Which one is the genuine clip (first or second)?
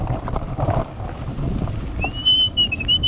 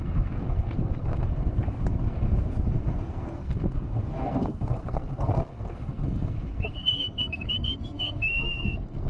first